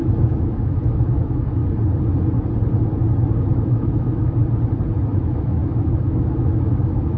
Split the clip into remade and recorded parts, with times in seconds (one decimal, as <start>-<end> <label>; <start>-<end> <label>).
0.0-1.6 remade; 1.6-3.4 recorded; 3.4-4.4 remade; 4.4-5.1 recorded; 5.1-7.2 remade